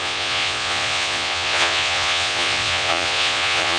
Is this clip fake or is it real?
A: fake